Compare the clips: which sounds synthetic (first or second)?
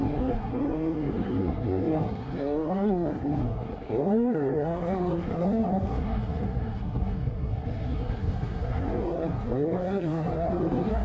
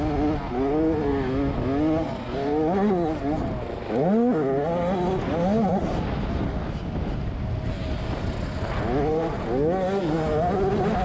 first